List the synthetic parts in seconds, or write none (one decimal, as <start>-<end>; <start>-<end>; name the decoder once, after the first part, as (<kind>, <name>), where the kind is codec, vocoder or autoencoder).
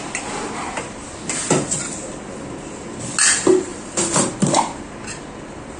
3.7-4.3 (vocoder, BigVGAN v2)